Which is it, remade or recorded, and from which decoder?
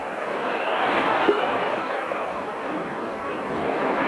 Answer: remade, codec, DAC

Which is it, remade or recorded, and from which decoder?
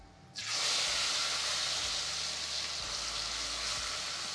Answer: recorded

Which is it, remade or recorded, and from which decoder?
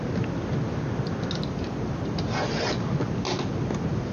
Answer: recorded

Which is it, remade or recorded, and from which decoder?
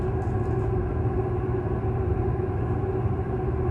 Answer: recorded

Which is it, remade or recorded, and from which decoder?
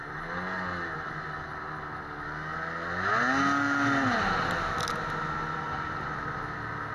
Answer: recorded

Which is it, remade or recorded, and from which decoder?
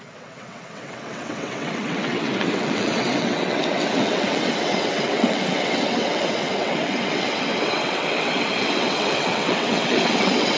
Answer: remade, vocoder, WaveNeXt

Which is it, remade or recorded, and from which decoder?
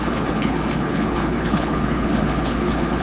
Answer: remade, codec, HILCodec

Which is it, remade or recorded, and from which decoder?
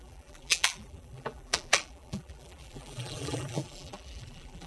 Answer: remade, vocoder, BigVGAN v2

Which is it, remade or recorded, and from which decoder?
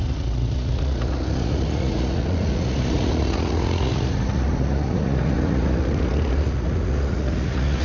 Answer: remade, vocoder, Vocos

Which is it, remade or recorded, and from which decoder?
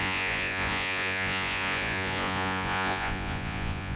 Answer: remade, vocoder, Vocos